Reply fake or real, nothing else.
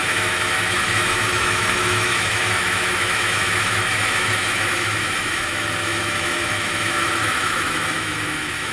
fake